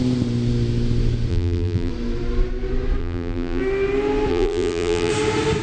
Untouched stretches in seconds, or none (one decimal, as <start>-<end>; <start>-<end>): 0.0-1.3; 1.9-3.0; 3.6-4.3; 5.1-5.6